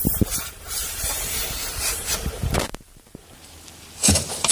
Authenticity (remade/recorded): remade